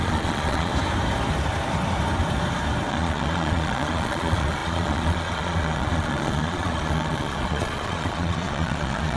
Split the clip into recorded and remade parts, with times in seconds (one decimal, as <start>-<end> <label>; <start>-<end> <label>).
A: 0.0-0.7 remade; 0.7-2.9 recorded; 2.9-9.2 remade